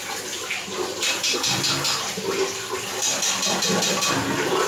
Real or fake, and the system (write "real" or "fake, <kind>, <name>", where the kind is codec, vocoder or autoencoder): real